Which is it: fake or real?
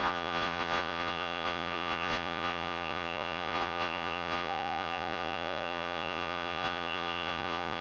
fake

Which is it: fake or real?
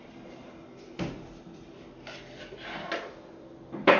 real